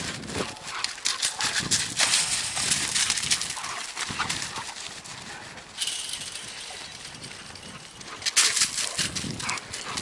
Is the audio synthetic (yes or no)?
no